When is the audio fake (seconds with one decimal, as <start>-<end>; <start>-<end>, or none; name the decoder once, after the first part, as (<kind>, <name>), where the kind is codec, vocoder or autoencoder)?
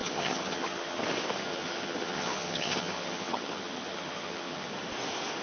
0.0-1.0 (vocoder, HiFi-GAN); 1.5-4.7